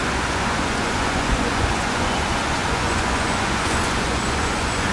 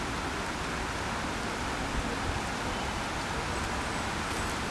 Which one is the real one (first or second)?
second